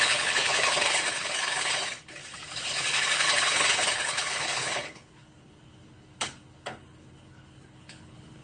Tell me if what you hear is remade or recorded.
remade